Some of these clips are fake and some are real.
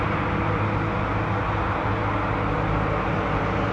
real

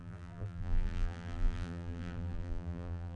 fake